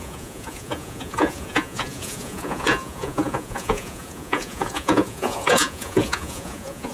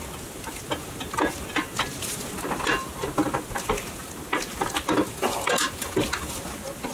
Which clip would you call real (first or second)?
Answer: second